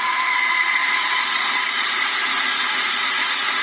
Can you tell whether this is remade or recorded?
remade